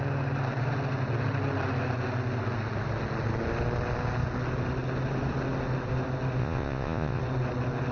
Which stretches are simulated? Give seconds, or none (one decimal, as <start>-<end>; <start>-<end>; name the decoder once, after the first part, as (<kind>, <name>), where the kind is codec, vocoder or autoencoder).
6.4-7.2 (vocoder, Vocos)